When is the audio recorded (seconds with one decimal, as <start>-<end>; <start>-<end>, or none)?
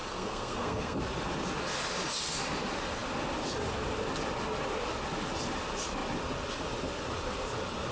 1.0-7.9